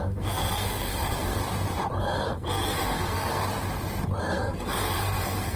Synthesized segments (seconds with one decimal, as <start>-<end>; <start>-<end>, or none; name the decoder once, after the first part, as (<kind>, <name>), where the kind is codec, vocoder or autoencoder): 0.0-1.4 (codec, SNAC); 2.0-3.4; 4.2-5.6